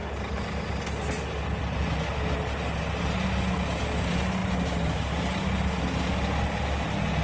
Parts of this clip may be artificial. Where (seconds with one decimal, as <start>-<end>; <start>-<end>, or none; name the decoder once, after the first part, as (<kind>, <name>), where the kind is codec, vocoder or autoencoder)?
none